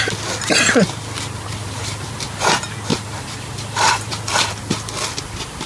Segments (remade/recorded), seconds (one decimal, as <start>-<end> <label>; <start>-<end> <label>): 0.0-1.6 recorded; 1.6-2.5 remade; 2.5-2.9 recorded; 2.9-4.1 remade; 4.1-5.7 recorded